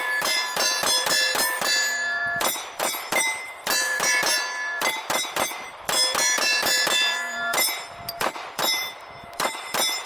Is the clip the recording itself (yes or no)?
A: no